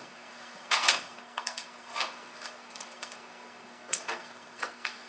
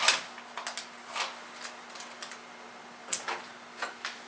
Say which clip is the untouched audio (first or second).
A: second